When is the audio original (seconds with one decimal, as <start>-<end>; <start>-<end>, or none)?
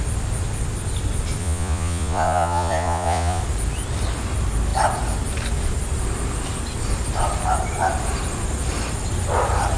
0.0-1.4; 3.4-9.8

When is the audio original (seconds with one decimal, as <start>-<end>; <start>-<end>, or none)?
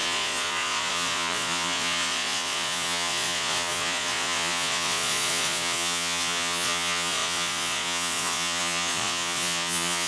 none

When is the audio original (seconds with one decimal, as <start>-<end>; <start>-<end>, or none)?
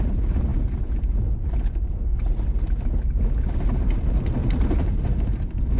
0.0-4.4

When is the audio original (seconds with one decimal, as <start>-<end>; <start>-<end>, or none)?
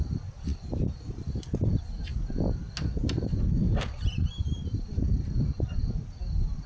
0.0-0.5; 1.4-6.7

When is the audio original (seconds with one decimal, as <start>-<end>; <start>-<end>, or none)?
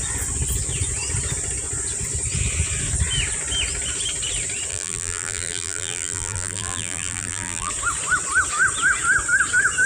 0.0-4.7; 7.7-9.9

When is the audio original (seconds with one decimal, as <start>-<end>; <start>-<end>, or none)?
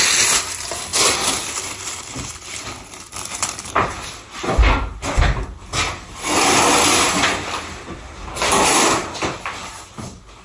0.0-0.9; 1.5-8.2; 9.6-10.4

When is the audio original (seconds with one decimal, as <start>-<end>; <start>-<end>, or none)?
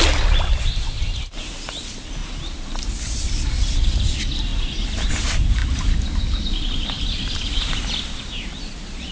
0.0-9.1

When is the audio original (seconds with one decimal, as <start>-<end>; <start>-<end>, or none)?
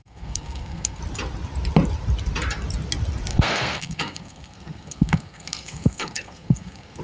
1.0-3.3